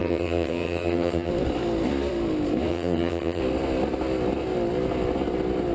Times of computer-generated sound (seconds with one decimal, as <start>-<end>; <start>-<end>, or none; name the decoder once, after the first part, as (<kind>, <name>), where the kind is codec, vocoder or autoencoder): 0.0-1.3 (vocoder, HiFi-GAN); 2.7-3.4